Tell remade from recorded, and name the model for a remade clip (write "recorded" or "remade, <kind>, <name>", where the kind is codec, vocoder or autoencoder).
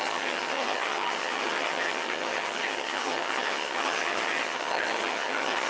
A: remade, vocoder, HiFi-GAN